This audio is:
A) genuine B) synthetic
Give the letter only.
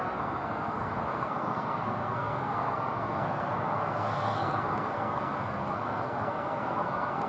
B